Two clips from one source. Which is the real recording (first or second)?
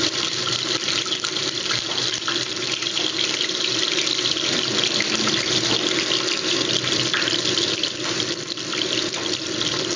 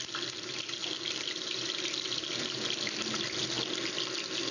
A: second